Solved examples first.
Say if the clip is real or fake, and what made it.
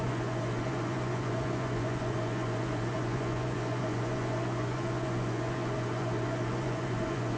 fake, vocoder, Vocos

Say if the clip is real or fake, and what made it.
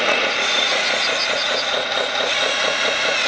fake, vocoder, Vocos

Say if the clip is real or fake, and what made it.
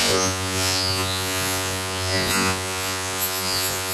fake, vocoder, Vocos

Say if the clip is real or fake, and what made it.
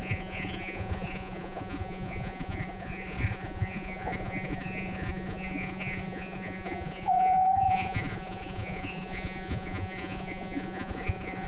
fake, vocoder, Vocos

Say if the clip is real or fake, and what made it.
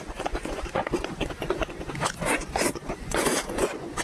fake, vocoder, Vocos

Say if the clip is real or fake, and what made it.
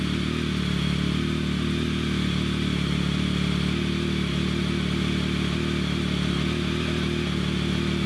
real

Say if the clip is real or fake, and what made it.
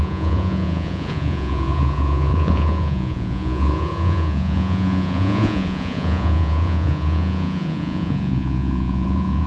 fake, vocoder, Vocos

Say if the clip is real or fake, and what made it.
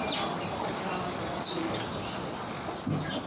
real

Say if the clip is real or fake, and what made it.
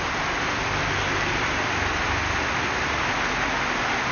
real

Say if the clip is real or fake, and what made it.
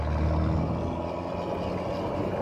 real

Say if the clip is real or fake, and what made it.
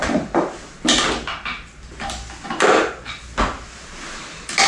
real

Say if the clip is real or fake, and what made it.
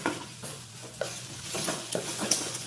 fake, vocoder, Vocos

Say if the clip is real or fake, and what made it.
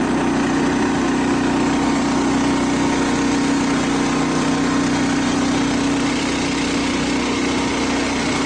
real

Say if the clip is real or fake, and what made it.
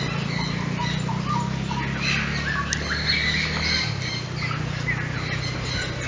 real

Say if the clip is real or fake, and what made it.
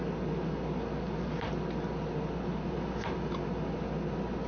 real